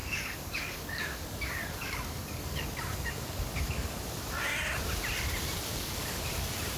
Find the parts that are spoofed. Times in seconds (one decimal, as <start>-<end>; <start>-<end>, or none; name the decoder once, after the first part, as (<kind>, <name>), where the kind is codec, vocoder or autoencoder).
0.0-4.1 (codec, DAC); 5.7-6.3